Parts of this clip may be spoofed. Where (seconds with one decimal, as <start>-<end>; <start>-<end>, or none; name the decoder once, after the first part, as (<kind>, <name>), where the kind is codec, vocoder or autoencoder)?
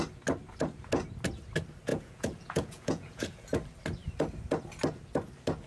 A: 1.9-3.5 (vocoder, Vocos)